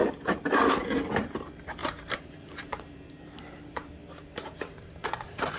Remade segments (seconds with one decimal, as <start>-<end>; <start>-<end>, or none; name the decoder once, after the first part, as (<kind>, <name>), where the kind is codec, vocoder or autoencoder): 0.0-1.1 (vocoder, BigVGAN v2); 1.8-5.6